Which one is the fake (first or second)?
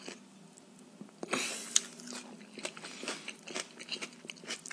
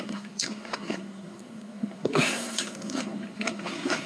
second